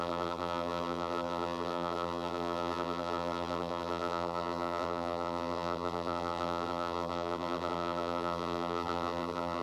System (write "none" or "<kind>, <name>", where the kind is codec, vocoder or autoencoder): vocoder, BigVGAN v2